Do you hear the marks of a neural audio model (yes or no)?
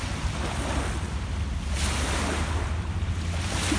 no